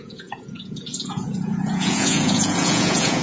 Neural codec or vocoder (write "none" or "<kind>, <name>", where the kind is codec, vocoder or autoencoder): vocoder, Vocos